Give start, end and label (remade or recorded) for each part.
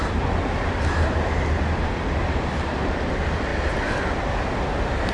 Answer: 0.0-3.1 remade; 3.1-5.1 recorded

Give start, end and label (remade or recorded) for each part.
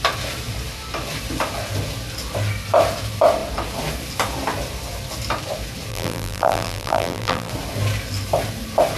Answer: 0.0-5.9 recorded; 5.9-7.5 remade; 7.5-9.0 recorded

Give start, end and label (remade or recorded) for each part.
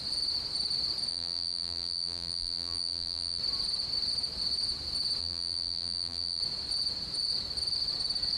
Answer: 0.0-1.1 recorded; 1.1-3.4 remade; 3.4-5.2 recorded; 5.2-6.4 remade; 6.4-8.4 recorded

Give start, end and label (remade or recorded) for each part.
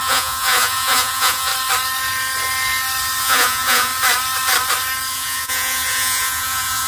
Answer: 0.0-1.5 remade; 1.5-3.2 recorded; 3.2-3.9 remade; 3.9-5.1 recorded; 5.1-6.9 remade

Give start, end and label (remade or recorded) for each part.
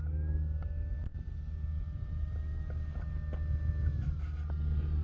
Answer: 0.0-5.0 recorded